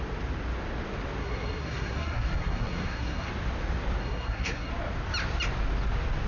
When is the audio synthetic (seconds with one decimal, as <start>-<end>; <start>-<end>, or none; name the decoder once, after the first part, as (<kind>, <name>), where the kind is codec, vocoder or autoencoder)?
1.2-3.3 (codec, SNAC); 4.0-4.7